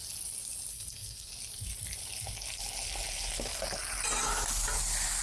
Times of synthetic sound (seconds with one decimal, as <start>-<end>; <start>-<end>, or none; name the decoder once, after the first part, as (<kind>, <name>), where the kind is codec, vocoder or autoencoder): 0.7-1.3 (codec, SNAC)